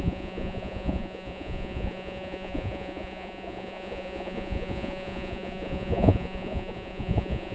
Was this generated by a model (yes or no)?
yes